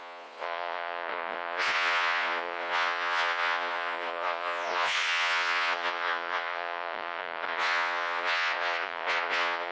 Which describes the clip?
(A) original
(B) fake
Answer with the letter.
B